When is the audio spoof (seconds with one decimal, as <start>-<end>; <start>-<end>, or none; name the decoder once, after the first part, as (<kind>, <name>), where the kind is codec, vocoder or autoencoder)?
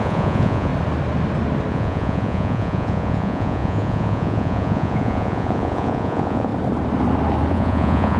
0.0-0.7 (vocoder, Vocos); 1.7-6.5; 7.5-8.2